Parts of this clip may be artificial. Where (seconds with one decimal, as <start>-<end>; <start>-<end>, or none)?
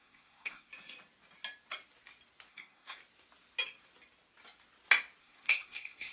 0.0-0.7; 2.5-3.0; 5.2-6.1